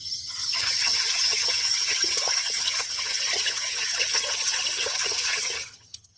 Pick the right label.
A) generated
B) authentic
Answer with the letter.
A